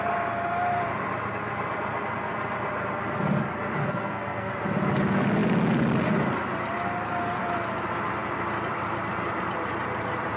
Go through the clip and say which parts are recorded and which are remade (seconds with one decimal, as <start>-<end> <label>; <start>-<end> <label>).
0.0-3.8 recorded; 3.8-4.5 remade; 4.5-10.4 recorded